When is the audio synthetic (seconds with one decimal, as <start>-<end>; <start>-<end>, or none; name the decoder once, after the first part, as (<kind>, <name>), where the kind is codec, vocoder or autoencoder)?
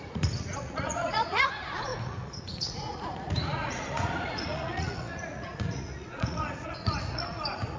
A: 0.0-7.8 (vocoder, Vocos)